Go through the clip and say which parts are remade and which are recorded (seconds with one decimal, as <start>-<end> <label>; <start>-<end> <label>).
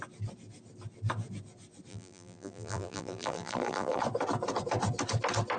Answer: 0.0-1.9 recorded; 1.9-4.0 remade; 4.0-5.6 recorded